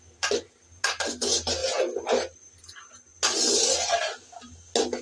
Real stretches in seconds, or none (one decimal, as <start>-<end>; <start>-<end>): 0.0-5.0